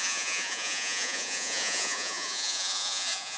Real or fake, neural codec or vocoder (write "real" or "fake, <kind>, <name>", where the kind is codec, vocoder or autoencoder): fake, vocoder, Vocos